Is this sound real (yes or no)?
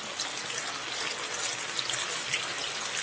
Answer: yes